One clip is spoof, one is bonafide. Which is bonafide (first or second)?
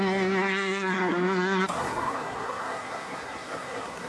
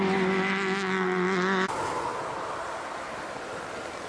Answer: second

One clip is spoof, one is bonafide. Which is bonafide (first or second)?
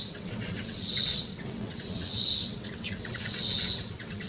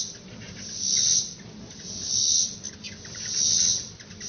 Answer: second